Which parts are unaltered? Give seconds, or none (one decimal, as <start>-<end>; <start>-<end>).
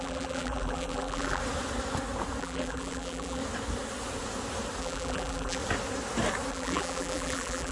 1.4-2.4; 3.4-4.8; 5.6-6.5